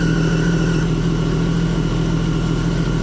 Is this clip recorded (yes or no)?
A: yes